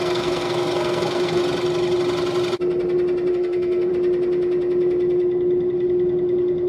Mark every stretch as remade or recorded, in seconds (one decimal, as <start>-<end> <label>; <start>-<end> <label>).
0.0-1.4 remade; 1.4-3.3 recorded; 3.3-3.9 remade; 3.9-6.7 recorded